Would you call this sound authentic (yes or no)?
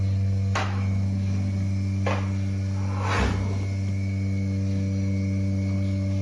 yes